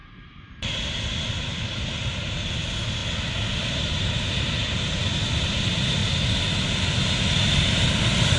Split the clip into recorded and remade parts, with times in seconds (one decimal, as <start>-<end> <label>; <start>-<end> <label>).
0.0-3.0 remade; 3.0-3.7 recorded; 3.7-6.0 remade; 6.0-7.5 recorded; 7.5-8.4 remade